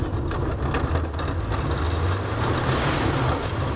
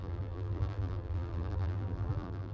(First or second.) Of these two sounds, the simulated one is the second